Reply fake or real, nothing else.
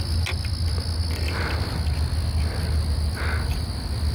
real